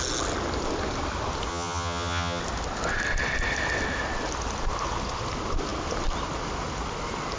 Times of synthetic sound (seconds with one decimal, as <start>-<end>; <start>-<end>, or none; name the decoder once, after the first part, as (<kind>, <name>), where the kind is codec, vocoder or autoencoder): 1.5-2.4 (vocoder, HiFi-GAN)